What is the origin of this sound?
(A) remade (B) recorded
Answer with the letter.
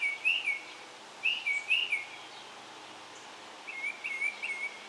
B